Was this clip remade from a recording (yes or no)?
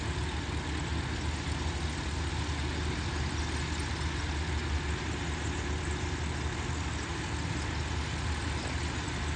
no